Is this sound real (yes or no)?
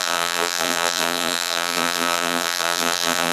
no